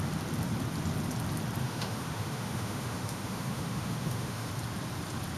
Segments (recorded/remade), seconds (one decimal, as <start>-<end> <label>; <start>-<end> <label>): 0.0-1.6 recorded; 1.6-4.5 remade; 4.5-5.4 recorded